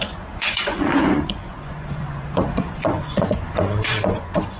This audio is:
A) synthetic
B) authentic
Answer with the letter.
A